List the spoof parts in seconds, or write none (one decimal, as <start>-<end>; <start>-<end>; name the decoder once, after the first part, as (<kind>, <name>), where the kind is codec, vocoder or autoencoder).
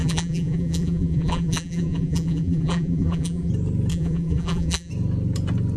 0.0-3.5 (vocoder, BigVGAN v2); 3.9-4.9